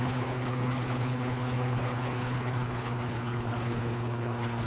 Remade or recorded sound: remade